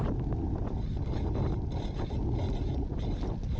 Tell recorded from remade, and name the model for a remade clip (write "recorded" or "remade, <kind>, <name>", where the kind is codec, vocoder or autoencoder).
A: recorded